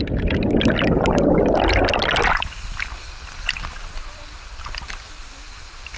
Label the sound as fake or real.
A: real